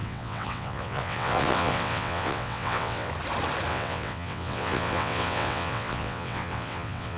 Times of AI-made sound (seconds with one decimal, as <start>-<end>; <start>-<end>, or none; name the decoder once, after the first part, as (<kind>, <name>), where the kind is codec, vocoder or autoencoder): 0.0-3.1 (vocoder, WaveNeXt); 3.7-7.2